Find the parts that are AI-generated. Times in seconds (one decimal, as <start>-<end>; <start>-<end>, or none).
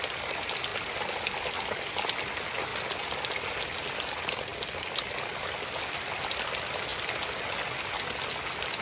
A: none